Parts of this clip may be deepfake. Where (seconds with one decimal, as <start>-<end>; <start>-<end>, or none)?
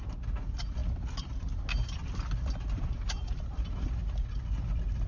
none